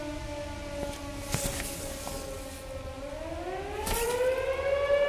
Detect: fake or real real